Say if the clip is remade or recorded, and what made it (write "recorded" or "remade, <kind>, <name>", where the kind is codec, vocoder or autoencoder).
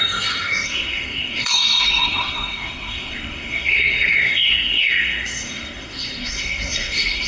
remade, codec, SNAC